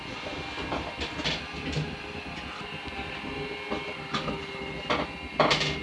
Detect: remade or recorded recorded